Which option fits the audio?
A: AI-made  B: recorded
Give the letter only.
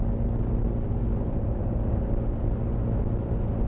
B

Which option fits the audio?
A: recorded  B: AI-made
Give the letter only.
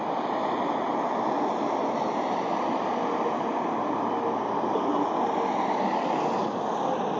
A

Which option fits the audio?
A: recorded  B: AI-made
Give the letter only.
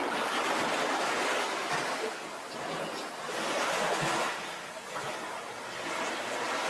A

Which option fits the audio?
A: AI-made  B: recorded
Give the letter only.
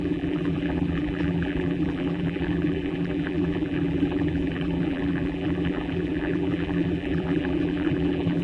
A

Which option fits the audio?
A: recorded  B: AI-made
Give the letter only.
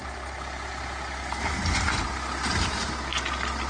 A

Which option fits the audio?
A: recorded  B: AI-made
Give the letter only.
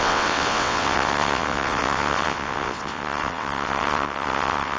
B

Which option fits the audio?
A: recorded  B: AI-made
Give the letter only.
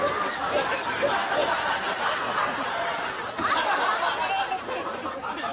A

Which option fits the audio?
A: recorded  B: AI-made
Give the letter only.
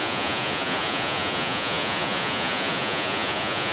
B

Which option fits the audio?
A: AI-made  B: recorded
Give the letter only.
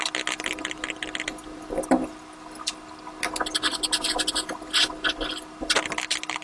B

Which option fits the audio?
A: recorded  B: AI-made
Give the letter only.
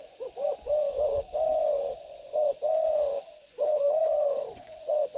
B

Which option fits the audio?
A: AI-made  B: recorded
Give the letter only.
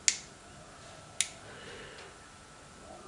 B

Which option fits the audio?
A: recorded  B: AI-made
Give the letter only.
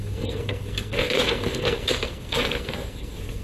B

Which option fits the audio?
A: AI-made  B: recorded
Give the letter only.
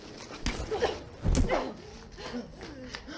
B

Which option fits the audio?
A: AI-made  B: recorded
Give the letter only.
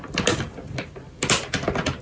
B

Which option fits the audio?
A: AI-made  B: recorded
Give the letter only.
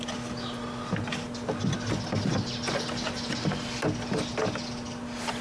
B